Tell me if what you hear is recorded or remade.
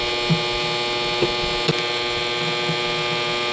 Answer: recorded